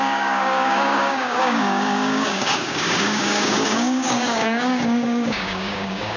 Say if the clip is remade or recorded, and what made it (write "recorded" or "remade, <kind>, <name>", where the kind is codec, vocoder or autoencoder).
remade, codec, DAC